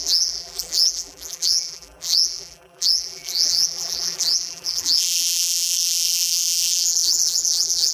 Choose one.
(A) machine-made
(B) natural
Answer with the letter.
A